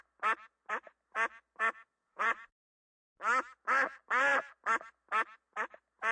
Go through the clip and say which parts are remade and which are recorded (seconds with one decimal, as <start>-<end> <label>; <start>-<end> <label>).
0.0-2.0 recorded; 2.0-2.6 remade; 2.6-6.1 recorded